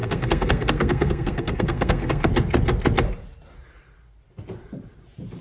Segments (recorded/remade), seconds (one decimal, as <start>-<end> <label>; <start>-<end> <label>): 0.0-2.3 remade; 2.3-5.4 recorded